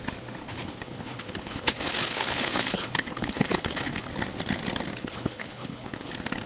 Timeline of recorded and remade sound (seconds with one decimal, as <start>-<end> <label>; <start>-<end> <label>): 0.0-0.4 recorded; 0.4-4.1 remade; 4.1-5.0 recorded; 5.0-6.1 remade; 6.1-6.5 recorded